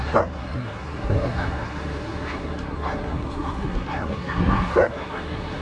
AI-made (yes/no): yes